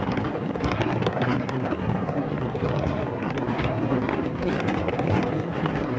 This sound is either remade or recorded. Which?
remade